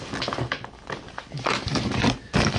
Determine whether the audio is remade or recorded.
recorded